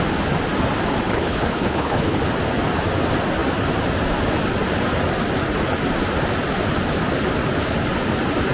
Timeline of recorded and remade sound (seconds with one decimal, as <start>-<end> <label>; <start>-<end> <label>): 0.0-1.1 recorded; 1.1-2.2 remade; 2.2-8.5 recorded